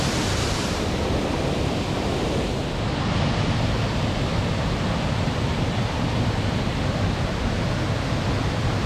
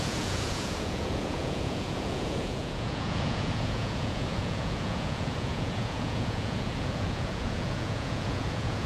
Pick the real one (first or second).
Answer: first